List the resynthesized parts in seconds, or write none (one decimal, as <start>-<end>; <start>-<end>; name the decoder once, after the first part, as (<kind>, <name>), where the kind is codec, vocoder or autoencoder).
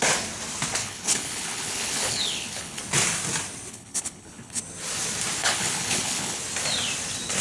0.8-2.8 (codec, HILCodec); 3.7-4.6; 5.4-6.4